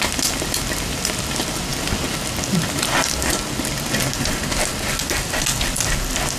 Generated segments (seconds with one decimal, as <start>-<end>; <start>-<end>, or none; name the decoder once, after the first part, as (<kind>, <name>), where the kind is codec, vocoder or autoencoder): none